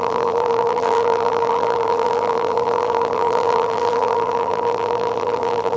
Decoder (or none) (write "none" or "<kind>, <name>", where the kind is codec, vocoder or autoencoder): vocoder, BigVGAN v2